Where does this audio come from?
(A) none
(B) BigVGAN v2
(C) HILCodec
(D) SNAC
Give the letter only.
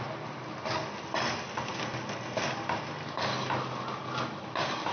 A